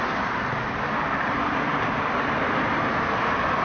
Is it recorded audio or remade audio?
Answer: recorded